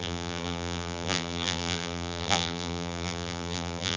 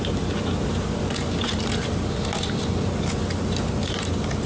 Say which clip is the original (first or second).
second